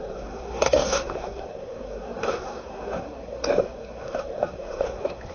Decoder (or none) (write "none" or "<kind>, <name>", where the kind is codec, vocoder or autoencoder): codec, SNAC